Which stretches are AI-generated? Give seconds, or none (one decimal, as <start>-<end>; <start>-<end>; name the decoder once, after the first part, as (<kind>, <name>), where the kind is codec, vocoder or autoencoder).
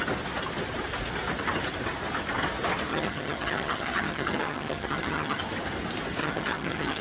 2.9-5.4 (vocoder, HiFi-GAN); 6.2-7.0